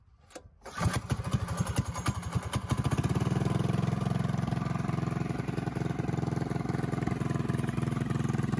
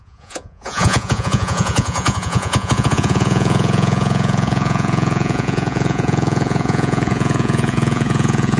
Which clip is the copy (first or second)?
second